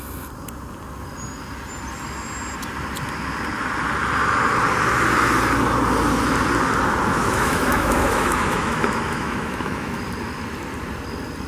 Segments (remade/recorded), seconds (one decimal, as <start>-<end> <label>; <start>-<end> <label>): 0.0-7.1 recorded; 7.1-10.0 remade; 10.0-11.5 recorded